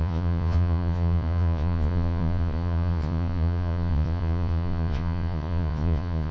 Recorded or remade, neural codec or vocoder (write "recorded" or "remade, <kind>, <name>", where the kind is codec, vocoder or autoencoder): remade, vocoder, Vocos